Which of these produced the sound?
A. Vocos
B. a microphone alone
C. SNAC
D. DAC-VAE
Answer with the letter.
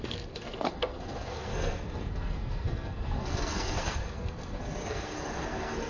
C